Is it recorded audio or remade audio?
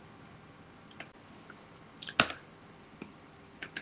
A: recorded